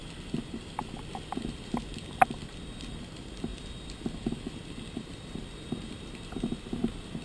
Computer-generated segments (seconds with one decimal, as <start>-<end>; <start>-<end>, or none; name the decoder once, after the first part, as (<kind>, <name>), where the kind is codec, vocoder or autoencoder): 0.0-7.2 (vocoder, BigVGAN v2)